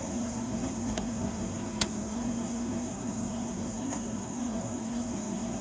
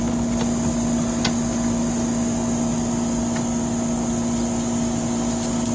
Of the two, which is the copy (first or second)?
first